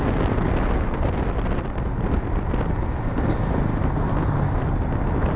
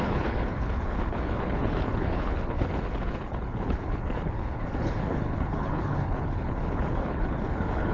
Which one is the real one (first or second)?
first